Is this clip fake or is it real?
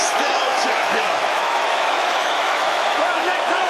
fake